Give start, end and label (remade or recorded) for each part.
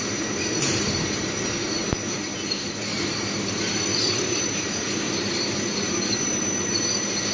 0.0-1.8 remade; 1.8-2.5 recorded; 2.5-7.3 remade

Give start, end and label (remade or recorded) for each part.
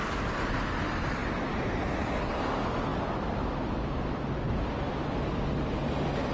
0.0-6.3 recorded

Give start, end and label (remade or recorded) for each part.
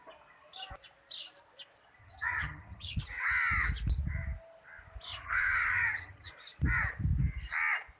0.0-2.0 recorded; 2.0-3.0 remade; 3.0-5.1 recorded; 5.1-6.3 remade; 6.3-8.0 recorded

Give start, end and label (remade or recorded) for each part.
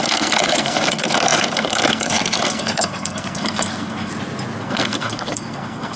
0.0-4.1 remade; 4.1-4.6 recorded; 4.6-6.0 remade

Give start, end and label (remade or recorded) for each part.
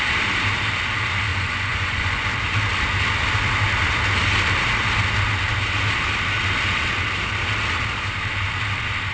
0.0-1.3 recorded; 1.3-2.3 remade; 2.3-9.1 recorded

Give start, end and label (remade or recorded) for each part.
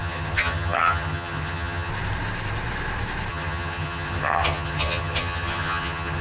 0.0-1.9 remade; 1.9-3.3 recorded; 3.3-6.2 remade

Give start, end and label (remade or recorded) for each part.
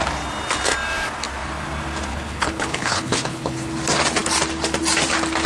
0.0-2.1 recorded; 2.1-3.7 remade; 3.7-5.5 recorded